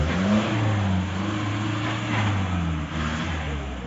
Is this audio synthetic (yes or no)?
no